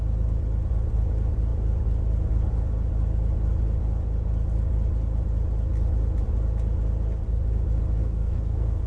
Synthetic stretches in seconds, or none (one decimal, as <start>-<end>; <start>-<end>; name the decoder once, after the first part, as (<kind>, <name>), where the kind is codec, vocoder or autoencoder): 8.0-8.9 (codec, SNAC)

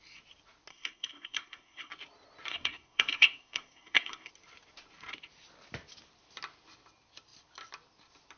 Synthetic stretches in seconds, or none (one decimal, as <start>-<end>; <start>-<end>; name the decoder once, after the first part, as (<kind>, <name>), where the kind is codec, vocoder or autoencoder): 0.7-1.9 (codec, SNAC); 2.5-4.3

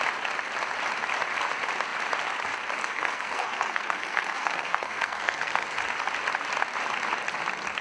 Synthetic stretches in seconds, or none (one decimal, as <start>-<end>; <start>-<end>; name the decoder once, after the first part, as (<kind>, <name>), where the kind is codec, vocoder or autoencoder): 2.8-5.8 (codec, SNAC)

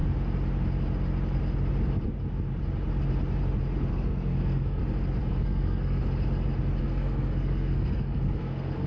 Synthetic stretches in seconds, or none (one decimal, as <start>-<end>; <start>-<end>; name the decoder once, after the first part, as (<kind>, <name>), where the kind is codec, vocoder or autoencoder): 3.9-4.8 (codec, SNAC); 5.3-6.0; 6.8-8.9

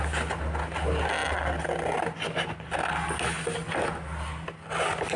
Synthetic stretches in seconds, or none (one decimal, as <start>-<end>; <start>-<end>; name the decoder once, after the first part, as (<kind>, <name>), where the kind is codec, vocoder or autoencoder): none

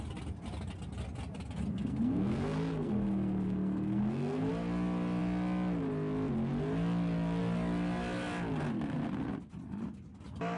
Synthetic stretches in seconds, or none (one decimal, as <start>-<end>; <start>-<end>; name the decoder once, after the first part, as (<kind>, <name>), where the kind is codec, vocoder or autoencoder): 1.7-4.5 (codec, SNAC)

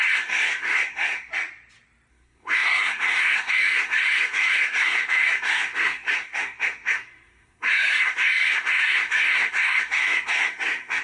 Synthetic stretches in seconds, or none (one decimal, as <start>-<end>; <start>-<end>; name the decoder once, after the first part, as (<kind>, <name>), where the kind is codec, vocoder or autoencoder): 0.0-1.3 (codec, SNAC); 2.1-11.0

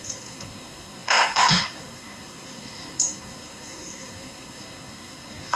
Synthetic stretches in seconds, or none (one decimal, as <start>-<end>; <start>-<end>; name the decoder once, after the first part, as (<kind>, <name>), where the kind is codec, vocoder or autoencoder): 0.0-5.6 (codec, SNAC)